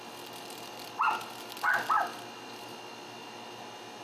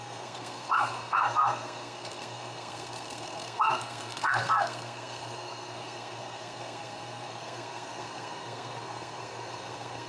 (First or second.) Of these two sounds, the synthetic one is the second